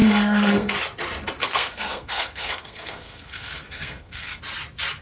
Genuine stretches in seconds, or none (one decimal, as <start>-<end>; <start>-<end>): 0.7-1.4; 4.4-5.0